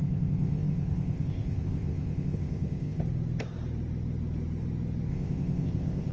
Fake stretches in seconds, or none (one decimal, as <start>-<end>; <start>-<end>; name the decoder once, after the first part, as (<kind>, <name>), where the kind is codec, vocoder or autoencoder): 0.0-3.0 (codec, ZipCodec); 5.1-6.1